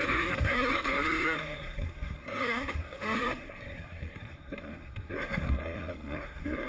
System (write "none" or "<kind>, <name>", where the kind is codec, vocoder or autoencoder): codec, SNAC